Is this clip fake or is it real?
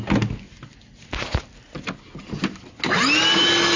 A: real